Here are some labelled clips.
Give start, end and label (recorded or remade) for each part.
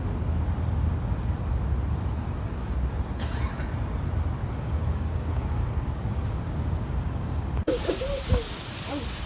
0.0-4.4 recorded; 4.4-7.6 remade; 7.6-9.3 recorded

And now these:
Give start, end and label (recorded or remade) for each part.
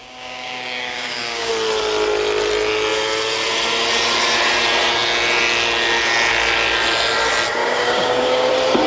0.0-1.5 remade; 1.5-7.6 recorded; 7.6-8.5 remade; 8.5-8.9 recorded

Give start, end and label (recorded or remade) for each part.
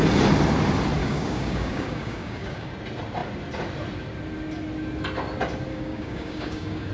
0.0-1.0 recorded; 1.0-2.7 remade; 2.7-5.7 recorded; 5.7-6.9 remade